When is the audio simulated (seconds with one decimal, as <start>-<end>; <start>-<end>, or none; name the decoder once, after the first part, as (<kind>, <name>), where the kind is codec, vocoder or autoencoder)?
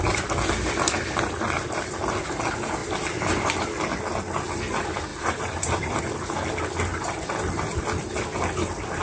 5.1-6.0 (vocoder, BigVGAN v2)